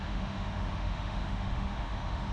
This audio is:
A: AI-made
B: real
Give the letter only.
A